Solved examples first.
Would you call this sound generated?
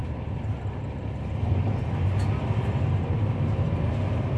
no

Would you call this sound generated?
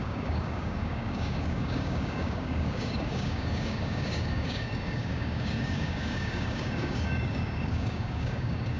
yes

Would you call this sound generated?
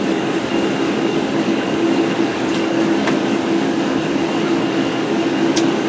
yes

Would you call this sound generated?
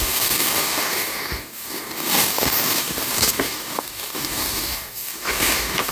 yes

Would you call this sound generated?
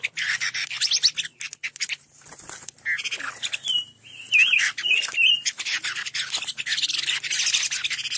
no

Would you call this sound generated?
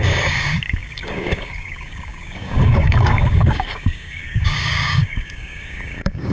yes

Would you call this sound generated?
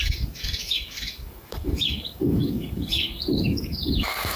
yes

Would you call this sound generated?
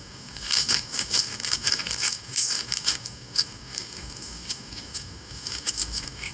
yes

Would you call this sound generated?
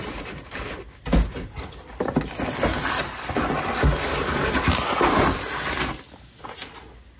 no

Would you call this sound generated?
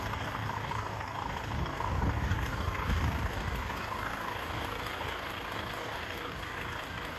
yes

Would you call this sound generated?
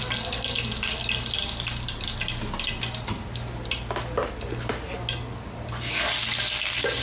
no